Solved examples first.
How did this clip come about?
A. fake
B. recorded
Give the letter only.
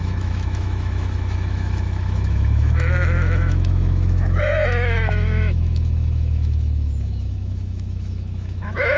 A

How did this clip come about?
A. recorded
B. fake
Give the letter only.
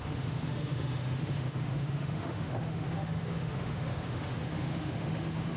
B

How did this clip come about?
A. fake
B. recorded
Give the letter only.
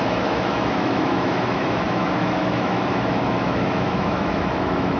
A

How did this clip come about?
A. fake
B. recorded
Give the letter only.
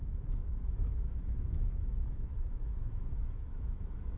A